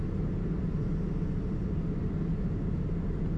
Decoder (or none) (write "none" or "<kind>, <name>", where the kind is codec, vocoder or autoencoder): none